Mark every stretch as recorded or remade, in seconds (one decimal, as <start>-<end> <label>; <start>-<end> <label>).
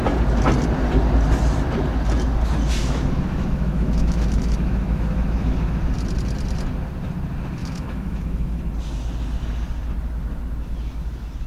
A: 0.0-2.8 recorded; 2.8-5.8 remade; 5.8-7.6 recorded; 7.6-8.6 remade; 8.6-11.5 recorded